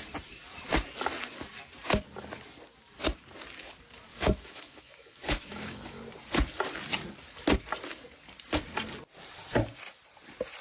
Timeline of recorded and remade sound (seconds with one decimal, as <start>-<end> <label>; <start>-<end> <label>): 0.0-4.1 recorded; 4.1-6.0 remade; 6.0-10.6 recorded